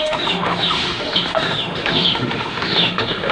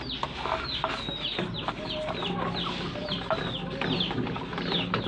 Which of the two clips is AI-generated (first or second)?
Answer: first